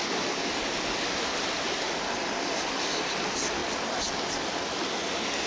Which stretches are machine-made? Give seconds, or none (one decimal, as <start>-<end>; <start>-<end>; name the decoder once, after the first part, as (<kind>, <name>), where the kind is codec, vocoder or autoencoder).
none